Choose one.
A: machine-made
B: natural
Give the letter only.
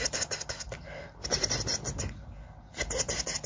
B